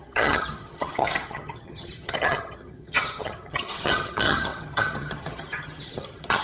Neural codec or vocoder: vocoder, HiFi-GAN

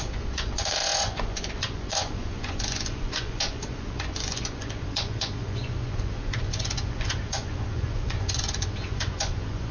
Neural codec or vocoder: vocoder, Vocos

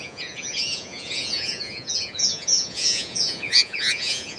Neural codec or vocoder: vocoder, Vocos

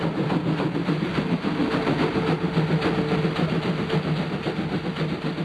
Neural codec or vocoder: none